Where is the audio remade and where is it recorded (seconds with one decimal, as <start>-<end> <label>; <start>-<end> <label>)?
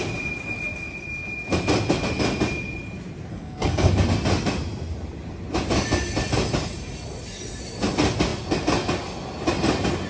0.0-3.3 recorded; 3.3-3.9 remade; 3.9-10.1 recorded